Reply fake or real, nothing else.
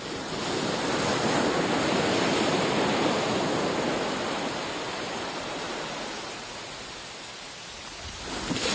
real